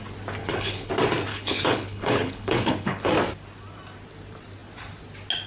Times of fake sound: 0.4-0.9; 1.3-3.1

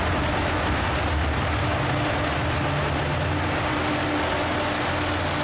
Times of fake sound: none

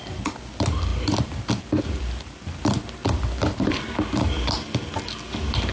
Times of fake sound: none

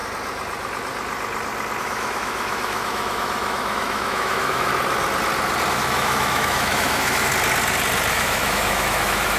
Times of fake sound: 1.8-4.7; 5.7-7.3; 8.1-9.4

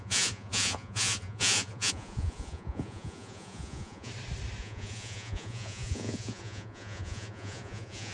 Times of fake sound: 0.0-4.1; 4.6-8.1

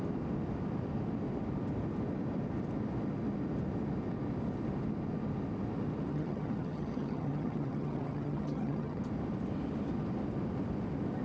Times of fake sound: 6.1-9.0

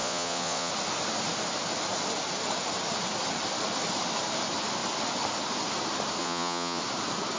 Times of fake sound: 0.0-0.7; 6.2-6.8